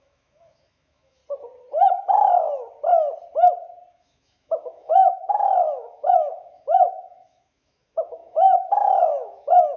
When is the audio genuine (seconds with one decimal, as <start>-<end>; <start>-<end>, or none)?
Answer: 1.2-3.9